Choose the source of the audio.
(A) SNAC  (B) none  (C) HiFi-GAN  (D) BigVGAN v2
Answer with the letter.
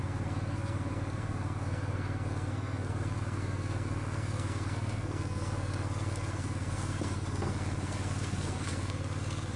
A